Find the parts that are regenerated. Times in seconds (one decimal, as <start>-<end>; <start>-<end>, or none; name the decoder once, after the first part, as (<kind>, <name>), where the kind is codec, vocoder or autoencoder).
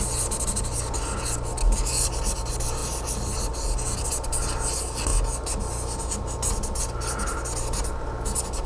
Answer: none